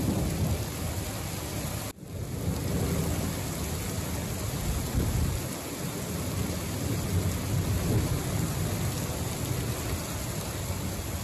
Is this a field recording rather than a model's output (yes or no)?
yes